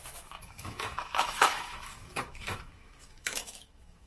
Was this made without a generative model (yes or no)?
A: no